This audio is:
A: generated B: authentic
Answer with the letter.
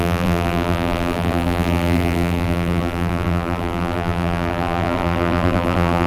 A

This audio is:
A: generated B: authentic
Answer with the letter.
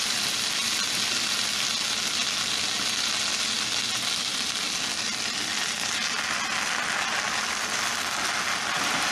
B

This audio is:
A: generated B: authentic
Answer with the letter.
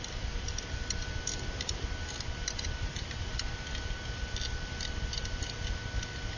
B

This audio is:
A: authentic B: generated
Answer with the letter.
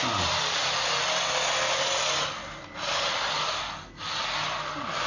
A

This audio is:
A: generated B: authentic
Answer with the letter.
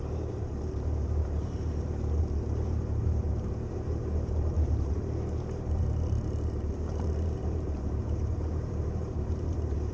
A